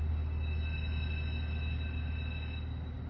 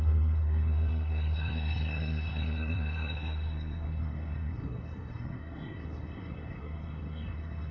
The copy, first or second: second